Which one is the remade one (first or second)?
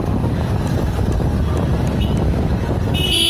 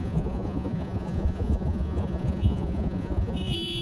second